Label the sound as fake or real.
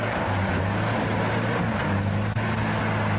real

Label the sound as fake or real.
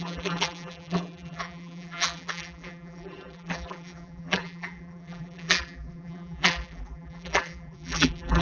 fake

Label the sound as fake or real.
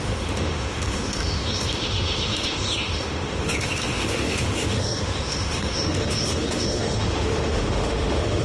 fake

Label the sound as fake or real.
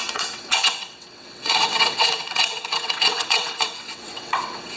fake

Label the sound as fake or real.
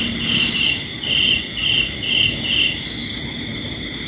real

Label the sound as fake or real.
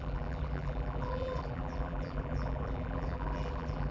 fake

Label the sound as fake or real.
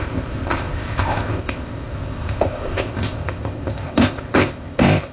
fake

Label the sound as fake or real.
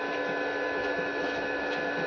fake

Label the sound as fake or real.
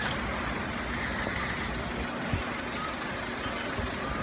real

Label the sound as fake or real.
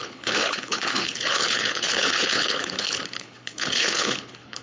fake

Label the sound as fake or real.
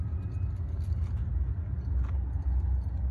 real